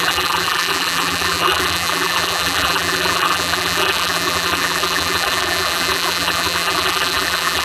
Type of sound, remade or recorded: remade